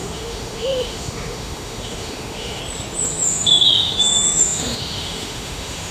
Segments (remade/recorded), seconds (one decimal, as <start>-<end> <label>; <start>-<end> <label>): 0.0-2.6 remade; 2.6-3.3 recorded; 3.3-5.9 remade